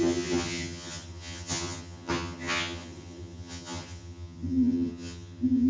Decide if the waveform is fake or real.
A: fake